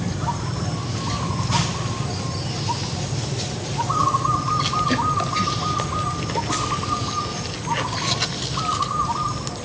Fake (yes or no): no